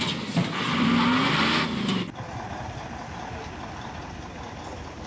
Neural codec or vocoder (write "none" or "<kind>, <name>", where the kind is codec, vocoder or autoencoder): none